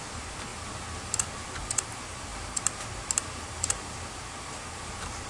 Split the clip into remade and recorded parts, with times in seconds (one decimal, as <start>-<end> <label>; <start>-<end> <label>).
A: 0.0-5.3 recorded